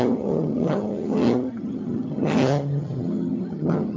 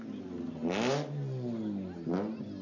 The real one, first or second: second